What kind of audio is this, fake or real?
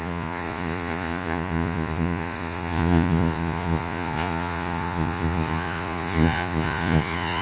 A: fake